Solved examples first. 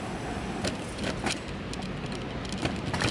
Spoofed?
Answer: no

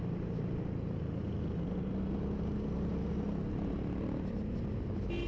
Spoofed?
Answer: no